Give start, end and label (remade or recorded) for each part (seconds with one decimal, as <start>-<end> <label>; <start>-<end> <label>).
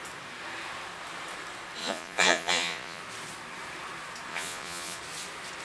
0.0-1.8 recorded; 1.8-3.0 remade; 3.0-4.3 recorded; 4.3-5.0 remade; 5.0-5.6 recorded